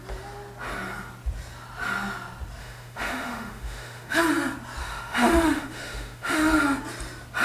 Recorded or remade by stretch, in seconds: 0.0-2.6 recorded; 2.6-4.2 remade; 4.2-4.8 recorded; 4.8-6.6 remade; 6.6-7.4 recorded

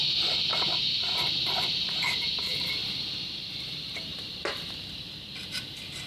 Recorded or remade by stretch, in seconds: 0.0-0.8 recorded; 0.8-2.8 remade; 2.8-3.4 recorded; 3.4-6.1 remade

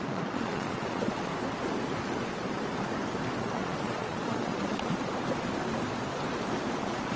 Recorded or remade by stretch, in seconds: 0.0-1.3 remade; 1.3-3.4 recorded; 3.4-5.1 remade; 5.1-6.8 recorded; 6.8-7.2 remade

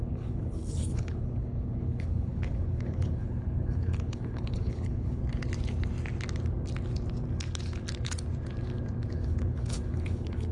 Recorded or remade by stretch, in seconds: 0.0-5.2 remade; 5.2-9.1 recorded; 9.1-10.5 remade